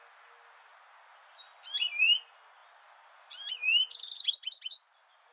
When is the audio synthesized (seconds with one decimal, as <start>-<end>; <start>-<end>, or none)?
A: none